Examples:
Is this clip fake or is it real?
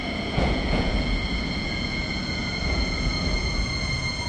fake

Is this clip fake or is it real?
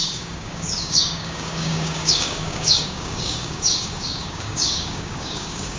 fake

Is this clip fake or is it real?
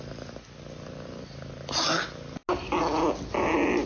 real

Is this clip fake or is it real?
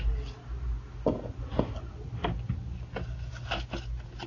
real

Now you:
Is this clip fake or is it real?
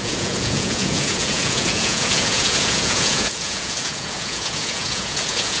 fake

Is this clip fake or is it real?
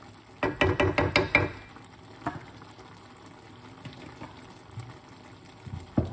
real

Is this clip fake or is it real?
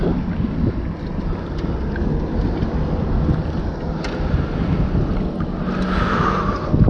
real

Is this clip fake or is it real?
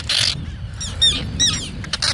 real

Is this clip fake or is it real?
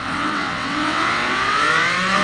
fake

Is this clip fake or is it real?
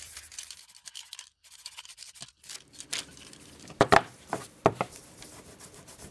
fake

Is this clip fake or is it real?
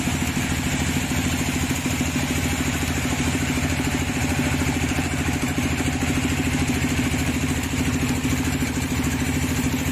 fake